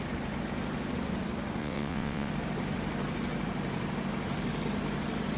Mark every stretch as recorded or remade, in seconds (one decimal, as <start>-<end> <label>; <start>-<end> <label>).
0.0-1.6 recorded; 1.6-2.3 remade; 2.3-5.4 recorded